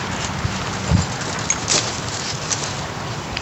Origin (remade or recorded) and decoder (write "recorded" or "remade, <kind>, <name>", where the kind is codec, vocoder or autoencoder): recorded